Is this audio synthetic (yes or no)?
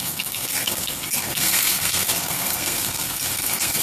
yes